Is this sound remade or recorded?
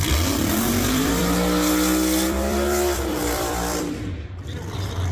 remade